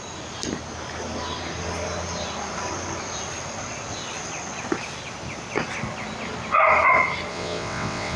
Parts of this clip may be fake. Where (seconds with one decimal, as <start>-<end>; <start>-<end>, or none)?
7.3-8.2